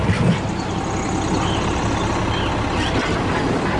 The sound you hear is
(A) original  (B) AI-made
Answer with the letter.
A